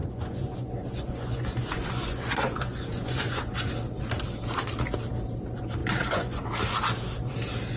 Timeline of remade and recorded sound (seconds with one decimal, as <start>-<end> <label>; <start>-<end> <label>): 0.0-3.4 remade; 3.4-5.8 recorded; 5.8-6.4 remade; 6.4-7.8 recorded